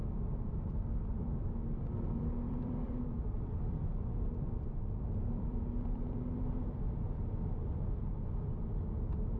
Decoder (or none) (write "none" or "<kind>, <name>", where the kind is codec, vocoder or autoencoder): vocoder, BigVGAN v2